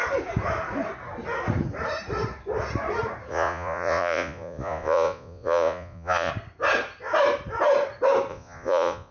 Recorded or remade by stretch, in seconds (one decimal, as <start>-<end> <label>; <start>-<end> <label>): 0.0-3.3 recorded; 3.3-6.3 remade; 6.3-8.3 recorded; 8.3-9.1 remade